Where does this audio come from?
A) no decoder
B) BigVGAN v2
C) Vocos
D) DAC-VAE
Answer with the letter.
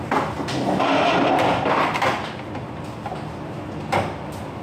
A